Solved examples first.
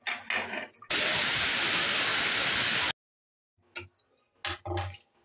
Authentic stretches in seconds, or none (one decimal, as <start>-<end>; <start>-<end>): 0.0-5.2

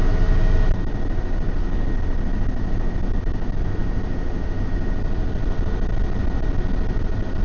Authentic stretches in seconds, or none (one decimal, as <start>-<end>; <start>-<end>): 0.0-7.4

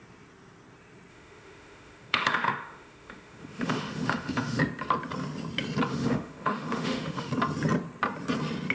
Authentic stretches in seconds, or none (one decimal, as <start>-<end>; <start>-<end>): 0.0-1.1; 4.6-5.9; 7.3-8.7

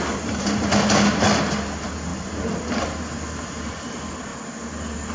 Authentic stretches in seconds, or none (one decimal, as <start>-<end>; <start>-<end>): 0.0-5.1